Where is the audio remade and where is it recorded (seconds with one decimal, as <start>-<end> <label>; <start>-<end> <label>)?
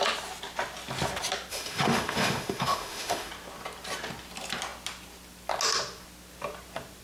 0.0-1.5 recorded; 1.5-3.3 remade; 3.3-7.0 recorded